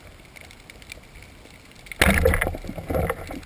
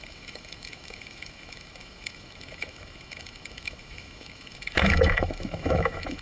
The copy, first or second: second